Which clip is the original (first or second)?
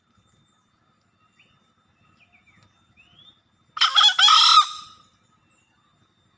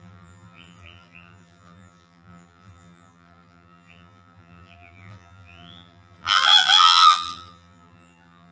first